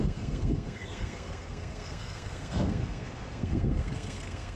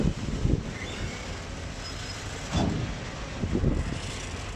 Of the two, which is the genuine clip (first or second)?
second